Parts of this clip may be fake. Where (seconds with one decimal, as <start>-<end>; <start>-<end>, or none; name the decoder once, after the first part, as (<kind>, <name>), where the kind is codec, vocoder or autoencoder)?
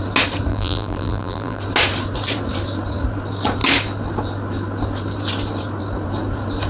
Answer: 0.5-1.6 (vocoder, BigVGAN v2)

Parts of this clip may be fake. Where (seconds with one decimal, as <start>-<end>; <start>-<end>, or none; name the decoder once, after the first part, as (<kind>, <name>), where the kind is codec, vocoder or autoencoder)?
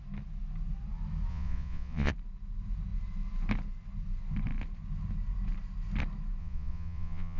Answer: 1.3-2.1 (vocoder, Vocos); 6.4-7.4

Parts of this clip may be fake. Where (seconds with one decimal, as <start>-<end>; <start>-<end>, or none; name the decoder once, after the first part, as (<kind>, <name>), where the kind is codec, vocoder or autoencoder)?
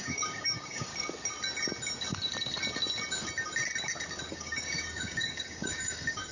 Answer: 0.0-0.9 (codec, DAC); 4.3-6.3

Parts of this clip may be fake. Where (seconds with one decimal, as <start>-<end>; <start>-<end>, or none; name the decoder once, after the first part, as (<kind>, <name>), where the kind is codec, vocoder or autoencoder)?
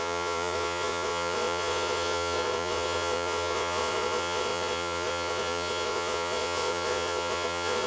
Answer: 0.0-7.9 (vocoder, Vocos)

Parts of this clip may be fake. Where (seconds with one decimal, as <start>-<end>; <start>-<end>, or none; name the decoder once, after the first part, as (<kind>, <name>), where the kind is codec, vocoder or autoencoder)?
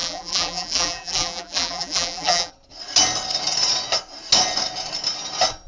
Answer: 0.0-2.5 (vocoder, BigVGAN v2)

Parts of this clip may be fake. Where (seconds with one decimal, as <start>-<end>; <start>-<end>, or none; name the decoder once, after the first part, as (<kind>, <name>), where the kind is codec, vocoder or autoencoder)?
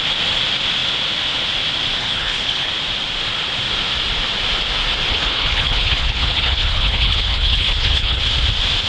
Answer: 2.0-2.7 (codec, HILCodec); 5.1-8.2